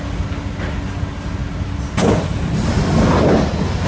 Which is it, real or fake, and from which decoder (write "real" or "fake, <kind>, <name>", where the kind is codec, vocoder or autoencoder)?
real